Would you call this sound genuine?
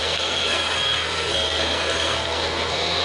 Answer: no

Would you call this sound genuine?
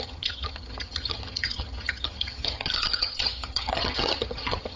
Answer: no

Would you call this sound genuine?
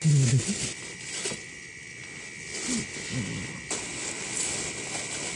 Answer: yes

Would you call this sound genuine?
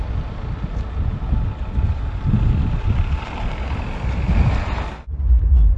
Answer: yes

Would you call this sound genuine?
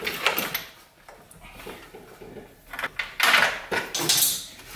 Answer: yes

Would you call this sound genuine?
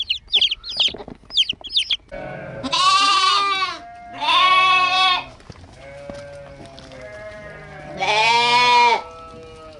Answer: yes